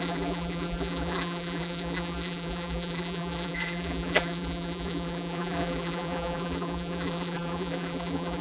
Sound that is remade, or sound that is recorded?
remade